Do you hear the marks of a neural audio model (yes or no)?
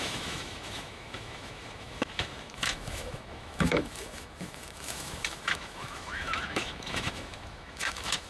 yes